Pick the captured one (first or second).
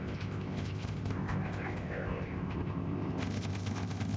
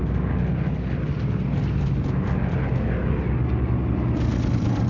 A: second